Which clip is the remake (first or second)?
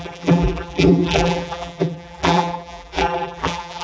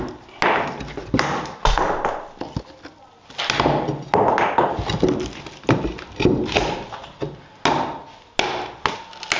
first